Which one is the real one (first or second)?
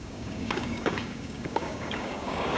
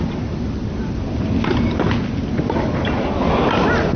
second